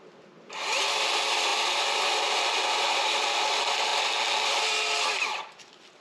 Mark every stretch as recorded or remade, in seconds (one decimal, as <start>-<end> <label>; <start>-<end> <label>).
0.0-6.0 recorded